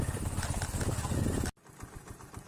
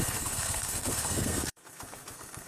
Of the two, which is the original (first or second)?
first